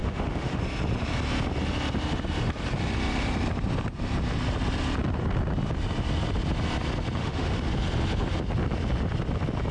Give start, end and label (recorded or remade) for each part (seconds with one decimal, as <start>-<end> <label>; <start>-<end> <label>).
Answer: 0.0-0.6 remade; 0.6-7.2 recorded; 7.2-7.7 remade; 7.7-9.7 recorded